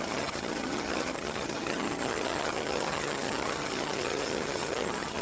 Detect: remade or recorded remade